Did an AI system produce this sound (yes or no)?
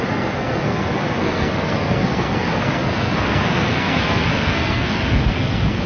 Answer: yes